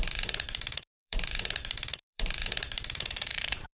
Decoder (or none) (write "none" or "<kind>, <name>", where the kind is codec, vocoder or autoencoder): vocoder, BigVGAN v2